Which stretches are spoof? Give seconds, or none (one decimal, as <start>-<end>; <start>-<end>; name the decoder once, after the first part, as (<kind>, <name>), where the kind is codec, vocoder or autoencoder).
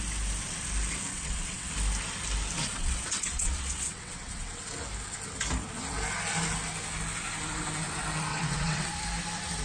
1.1-1.7 (vocoder, WaveNeXt); 2.6-4.7; 8.3-8.9